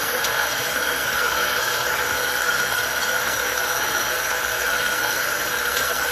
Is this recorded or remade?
remade